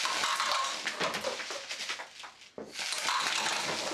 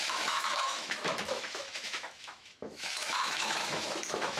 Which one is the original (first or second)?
first